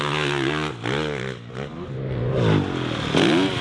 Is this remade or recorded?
recorded